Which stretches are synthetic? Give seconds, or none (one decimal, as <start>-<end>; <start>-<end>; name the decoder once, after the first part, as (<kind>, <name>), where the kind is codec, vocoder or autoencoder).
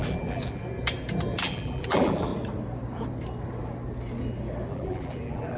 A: 0.0-0.6 (vocoder, BigVGAN v2); 1.4-2.3; 4.7-5.6